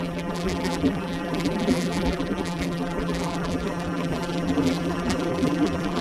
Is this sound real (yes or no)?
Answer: no